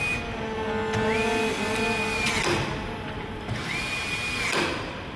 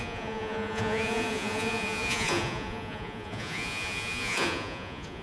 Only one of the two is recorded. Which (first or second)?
first